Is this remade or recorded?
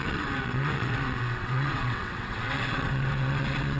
remade